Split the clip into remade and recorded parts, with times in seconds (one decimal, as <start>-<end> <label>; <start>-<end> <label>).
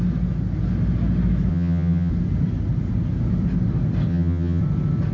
0.0-1.5 recorded; 1.5-2.1 remade; 2.1-4.1 recorded; 4.1-4.6 remade; 4.6-5.1 recorded